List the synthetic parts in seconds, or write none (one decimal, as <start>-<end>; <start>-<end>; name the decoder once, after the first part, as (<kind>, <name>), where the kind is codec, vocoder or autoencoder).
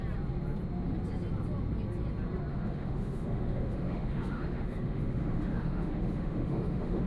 2.5-7.1 (autoencoder, DAC-VAE)